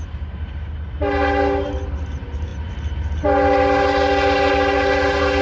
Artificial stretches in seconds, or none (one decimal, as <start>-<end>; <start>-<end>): none